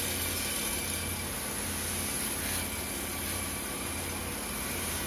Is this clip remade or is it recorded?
recorded